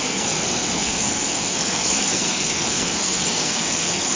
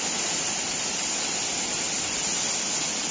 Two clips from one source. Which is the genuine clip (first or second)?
second